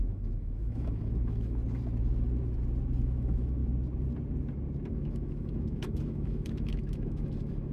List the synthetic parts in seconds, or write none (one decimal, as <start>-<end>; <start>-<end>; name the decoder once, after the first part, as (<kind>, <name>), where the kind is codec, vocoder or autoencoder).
0.0-1.6 (autoencoder, DAC-VAE); 3.0-3.6; 4.9-7.7